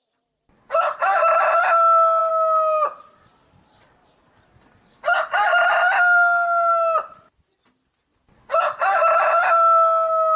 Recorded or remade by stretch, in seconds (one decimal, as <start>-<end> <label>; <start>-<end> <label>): 0.0-10.4 recorded